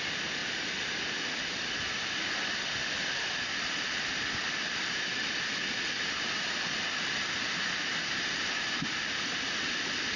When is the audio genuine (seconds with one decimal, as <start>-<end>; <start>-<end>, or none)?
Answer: 0.0-10.2